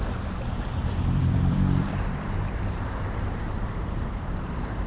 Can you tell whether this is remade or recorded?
remade